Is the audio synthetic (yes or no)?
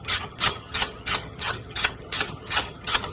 yes